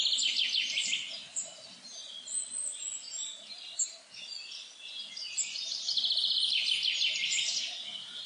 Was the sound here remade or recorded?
recorded